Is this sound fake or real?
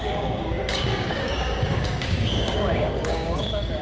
fake